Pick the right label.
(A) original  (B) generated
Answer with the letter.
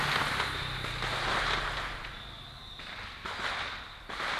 A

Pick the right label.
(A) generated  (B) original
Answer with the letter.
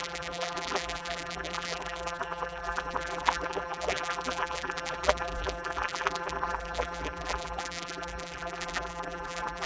A